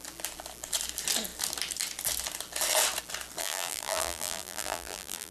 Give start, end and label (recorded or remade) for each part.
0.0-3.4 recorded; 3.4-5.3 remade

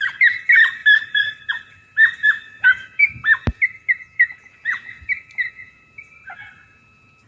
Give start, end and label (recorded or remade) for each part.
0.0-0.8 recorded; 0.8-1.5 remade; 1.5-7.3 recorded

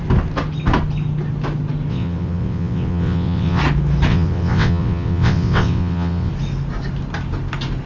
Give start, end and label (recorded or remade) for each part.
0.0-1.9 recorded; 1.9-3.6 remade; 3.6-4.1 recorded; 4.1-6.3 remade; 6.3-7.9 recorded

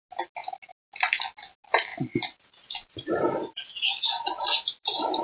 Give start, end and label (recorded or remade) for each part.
0.0-1.9 recorded; 1.9-5.2 remade

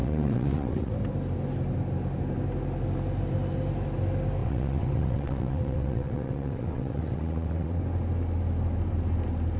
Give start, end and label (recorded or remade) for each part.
0.0-0.9 remade; 0.9-4.4 recorded; 4.4-7.8 remade; 7.8-9.6 recorded